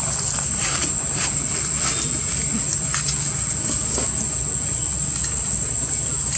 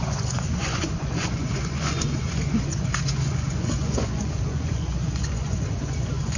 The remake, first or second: second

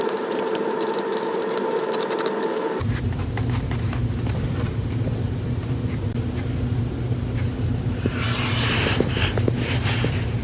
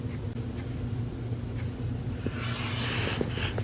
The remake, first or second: first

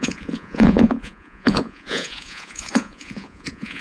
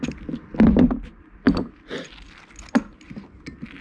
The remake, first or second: first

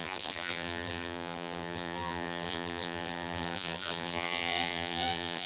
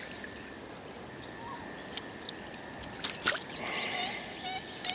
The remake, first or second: first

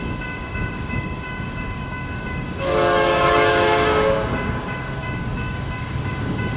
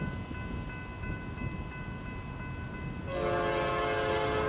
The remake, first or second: first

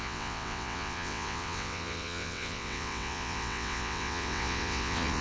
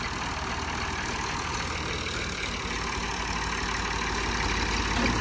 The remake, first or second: first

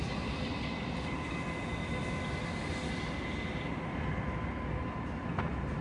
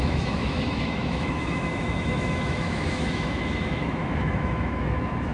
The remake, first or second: second